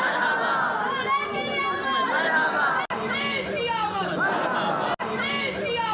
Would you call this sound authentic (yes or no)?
yes